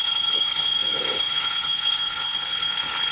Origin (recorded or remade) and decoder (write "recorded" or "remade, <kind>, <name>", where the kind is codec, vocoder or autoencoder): remade, codec, HILCodec